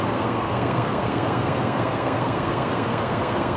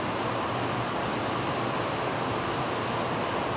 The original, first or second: second